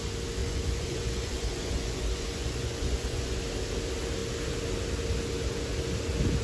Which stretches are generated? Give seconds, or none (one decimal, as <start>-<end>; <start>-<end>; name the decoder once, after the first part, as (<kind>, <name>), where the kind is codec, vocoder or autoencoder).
0.4-3.4 (vocoder, Vocos)